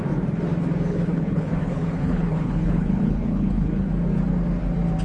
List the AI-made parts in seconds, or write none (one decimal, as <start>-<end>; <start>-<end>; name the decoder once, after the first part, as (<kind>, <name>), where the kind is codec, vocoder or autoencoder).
0.9-3.9 (codec, HILCodec)